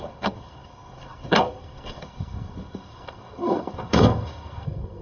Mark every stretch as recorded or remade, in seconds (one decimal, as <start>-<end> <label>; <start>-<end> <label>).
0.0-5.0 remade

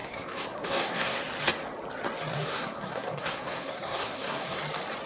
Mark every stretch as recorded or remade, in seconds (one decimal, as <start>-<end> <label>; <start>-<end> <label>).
0.0-1.2 remade; 1.2-2.3 recorded; 2.3-4.6 remade; 4.6-5.1 recorded

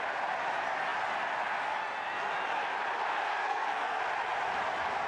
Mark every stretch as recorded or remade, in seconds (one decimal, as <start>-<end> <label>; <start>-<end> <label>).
0.0-3.3 recorded; 3.3-4.0 remade; 4.0-5.1 recorded

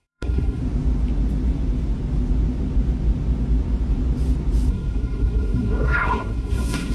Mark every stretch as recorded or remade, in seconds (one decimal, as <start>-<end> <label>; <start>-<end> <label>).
0.0-0.6 remade; 0.6-4.7 recorded; 4.7-6.9 remade

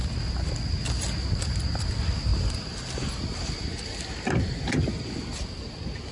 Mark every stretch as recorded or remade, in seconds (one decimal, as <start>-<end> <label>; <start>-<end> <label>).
0.0-6.1 recorded